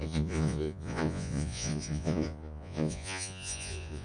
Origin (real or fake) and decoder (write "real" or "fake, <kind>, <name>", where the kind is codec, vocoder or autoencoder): fake, vocoder, Vocos